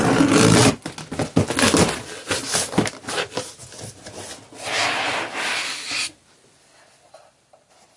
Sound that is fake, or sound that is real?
real